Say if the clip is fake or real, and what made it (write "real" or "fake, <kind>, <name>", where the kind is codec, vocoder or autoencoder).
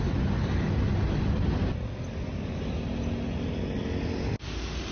real